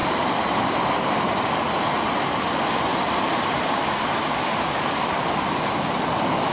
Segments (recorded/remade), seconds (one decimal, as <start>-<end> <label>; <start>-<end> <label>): 0.0-3.6 remade; 3.6-6.5 recorded